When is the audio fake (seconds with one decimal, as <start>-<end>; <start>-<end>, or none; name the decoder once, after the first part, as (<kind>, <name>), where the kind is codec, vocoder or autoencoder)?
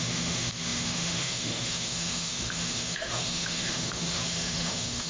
0.0-5.1 (autoencoder, DAC-VAE)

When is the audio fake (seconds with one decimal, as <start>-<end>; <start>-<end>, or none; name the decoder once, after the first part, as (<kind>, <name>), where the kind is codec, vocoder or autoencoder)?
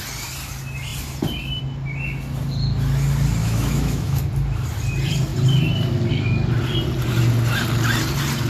3.4-4.2 (autoencoder, DAC-VAE)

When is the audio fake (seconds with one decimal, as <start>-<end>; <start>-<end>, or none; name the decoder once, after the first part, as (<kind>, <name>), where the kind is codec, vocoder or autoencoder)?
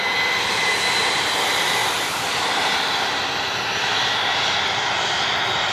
none